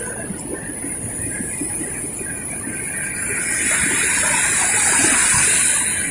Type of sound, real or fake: real